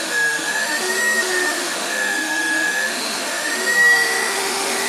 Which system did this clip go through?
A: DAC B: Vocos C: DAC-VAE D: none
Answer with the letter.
C